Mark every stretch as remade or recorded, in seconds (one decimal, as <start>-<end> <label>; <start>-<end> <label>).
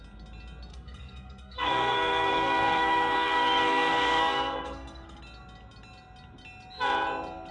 0.0-0.7 recorded; 0.7-5.2 remade; 5.2-7.5 recorded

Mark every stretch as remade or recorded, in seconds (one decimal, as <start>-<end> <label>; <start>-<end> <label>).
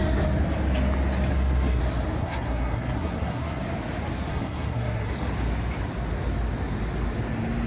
0.0-1.3 recorded; 1.3-1.8 remade; 1.8-2.2 recorded; 2.2-3.6 remade; 3.6-4.3 recorded; 4.3-5.1 remade; 5.1-7.7 recorded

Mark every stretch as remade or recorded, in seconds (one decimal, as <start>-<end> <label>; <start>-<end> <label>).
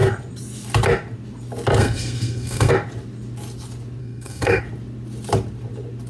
0.0-1.8 recorded; 1.8-2.7 remade; 2.7-4.0 recorded; 4.0-4.6 remade; 4.6-6.1 recorded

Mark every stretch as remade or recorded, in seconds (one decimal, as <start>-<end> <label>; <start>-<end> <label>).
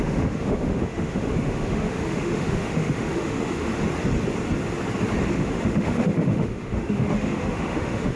0.0-3.7 remade; 3.7-5.3 recorded; 5.3-8.2 remade